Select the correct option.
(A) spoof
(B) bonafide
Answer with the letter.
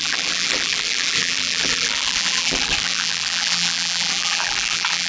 A